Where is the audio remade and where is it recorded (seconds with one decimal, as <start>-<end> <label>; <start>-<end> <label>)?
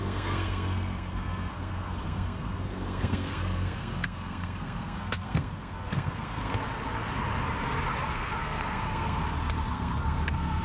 0.0-6.6 remade; 6.6-8.1 recorded; 8.1-9.2 remade; 9.2-9.7 recorded; 9.7-10.6 remade